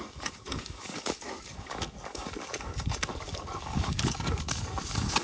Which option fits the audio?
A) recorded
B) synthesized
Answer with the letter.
B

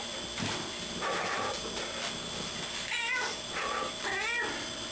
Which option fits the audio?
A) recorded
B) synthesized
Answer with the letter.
A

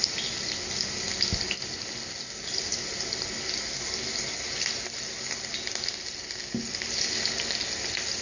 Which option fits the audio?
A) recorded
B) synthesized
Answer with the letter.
A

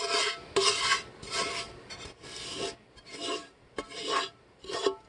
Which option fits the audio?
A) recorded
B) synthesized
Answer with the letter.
A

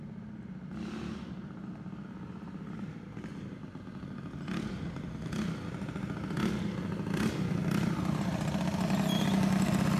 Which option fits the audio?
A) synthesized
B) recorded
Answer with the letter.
B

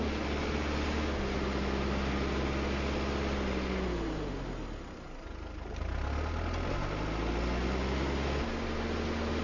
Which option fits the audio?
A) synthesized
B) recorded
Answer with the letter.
B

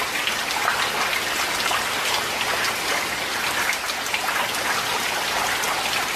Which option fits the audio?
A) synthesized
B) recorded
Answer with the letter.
B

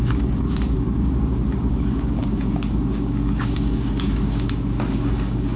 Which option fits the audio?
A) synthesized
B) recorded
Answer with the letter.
A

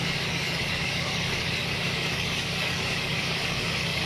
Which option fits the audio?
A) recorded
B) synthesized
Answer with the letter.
B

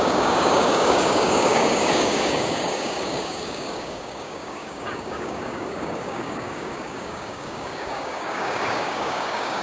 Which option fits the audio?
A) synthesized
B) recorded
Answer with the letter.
A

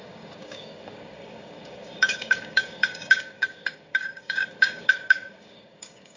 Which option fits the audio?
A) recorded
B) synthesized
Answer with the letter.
B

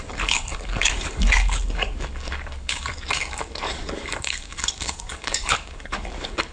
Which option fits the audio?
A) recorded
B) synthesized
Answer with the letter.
B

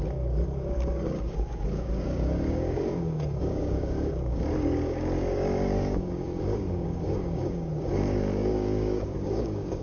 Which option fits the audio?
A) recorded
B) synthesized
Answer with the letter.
B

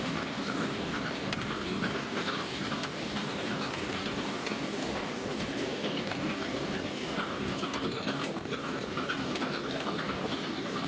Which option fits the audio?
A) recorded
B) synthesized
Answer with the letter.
B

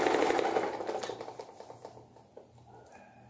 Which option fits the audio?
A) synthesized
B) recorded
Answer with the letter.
B